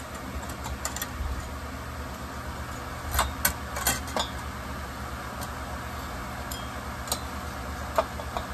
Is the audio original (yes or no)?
yes